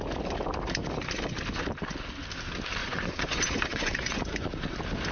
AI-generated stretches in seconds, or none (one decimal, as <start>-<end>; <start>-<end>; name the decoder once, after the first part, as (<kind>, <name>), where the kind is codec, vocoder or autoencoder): 2.8-4.5 (vocoder, Vocos)